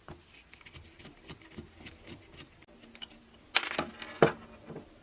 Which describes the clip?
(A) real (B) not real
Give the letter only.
A